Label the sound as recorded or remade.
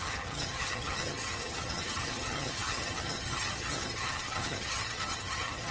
remade